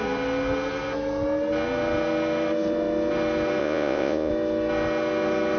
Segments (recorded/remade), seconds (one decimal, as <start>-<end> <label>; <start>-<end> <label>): 0.0-3.6 recorded; 3.6-4.3 remade; 4.3-5.6 recorded